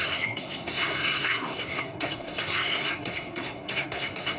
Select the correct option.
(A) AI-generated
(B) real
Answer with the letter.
A